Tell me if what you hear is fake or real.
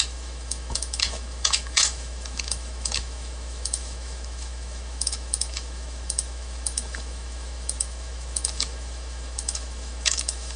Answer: fake